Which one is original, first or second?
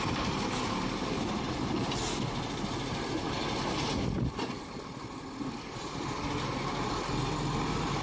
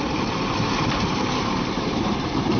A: first